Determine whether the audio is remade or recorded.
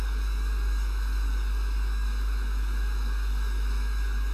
remade